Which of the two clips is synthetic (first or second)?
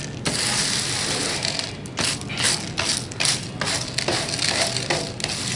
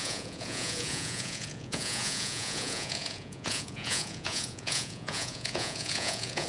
second